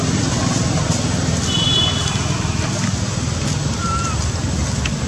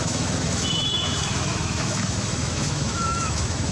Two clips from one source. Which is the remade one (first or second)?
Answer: second